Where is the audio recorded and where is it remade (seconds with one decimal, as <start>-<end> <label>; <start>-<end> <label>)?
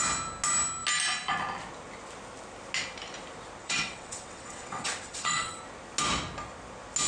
0.0-3.6 recorded; 3.6-5.6 remade; 5.6-7.1 recorded